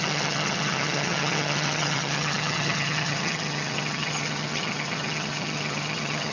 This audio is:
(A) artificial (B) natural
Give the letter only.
A